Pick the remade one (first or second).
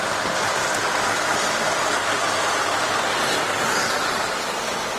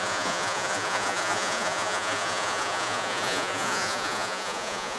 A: second